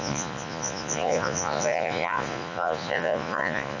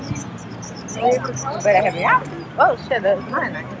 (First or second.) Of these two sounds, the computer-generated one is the first